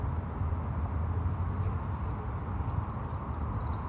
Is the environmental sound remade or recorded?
recorded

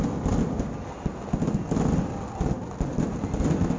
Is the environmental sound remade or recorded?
recorded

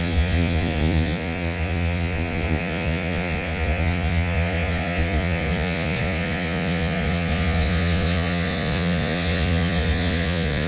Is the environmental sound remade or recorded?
remade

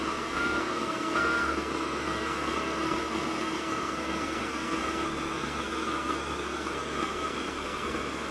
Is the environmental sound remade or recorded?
remade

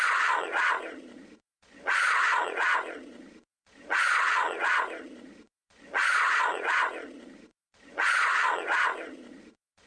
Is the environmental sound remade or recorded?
remade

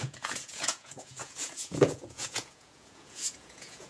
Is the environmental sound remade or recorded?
remade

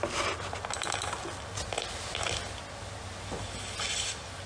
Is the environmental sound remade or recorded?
recorded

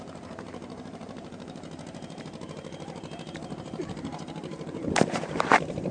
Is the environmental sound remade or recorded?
remade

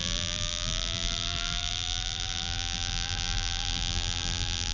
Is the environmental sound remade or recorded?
remade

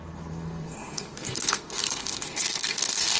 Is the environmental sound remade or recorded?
remade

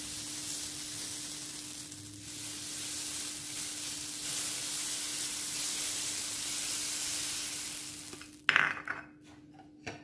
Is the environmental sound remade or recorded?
recorded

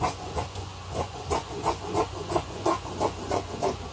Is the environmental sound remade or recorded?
remade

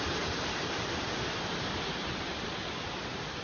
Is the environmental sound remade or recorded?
recorded